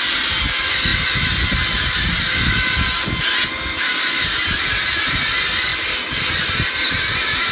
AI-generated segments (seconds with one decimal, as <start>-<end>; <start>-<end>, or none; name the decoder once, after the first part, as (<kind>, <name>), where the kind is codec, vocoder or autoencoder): none